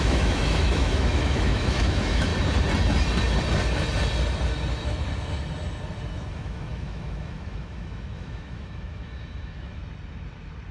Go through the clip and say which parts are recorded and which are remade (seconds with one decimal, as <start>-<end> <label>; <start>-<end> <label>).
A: 0.0-2.3 remade; 2.3-6.3 recorded; 6.3-9.8 remade; 9.8-10.7 recorded